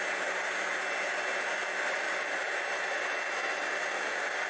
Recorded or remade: recorded